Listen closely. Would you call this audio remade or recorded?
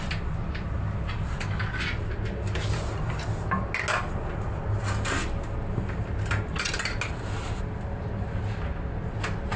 recorded